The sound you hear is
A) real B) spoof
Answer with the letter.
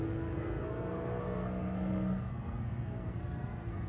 B